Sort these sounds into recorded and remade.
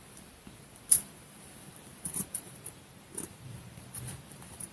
remade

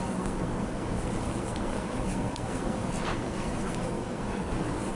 remade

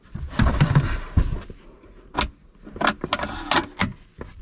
recorded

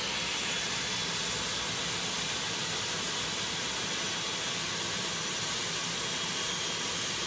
recorded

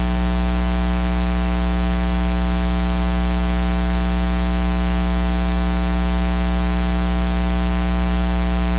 recorded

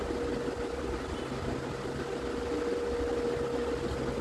recorded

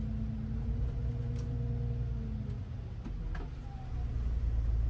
recorded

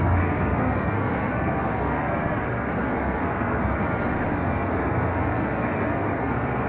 remade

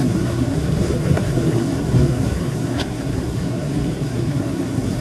remade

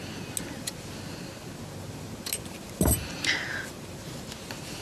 recorded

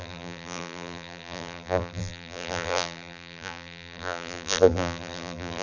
remade